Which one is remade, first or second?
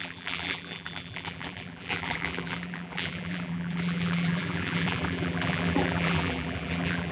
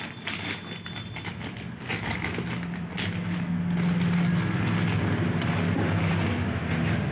first